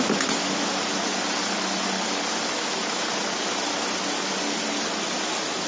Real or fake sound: real